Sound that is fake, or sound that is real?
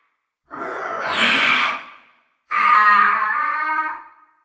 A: fake